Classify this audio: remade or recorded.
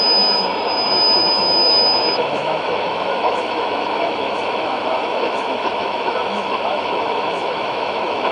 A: remade